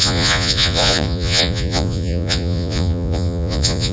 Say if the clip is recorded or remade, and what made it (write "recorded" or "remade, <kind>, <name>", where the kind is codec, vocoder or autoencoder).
remade, vocoder, Vocos